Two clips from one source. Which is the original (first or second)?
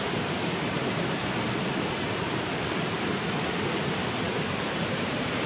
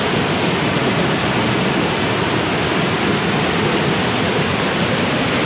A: second